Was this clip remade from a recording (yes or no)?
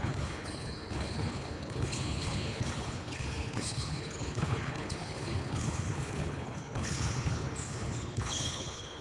yes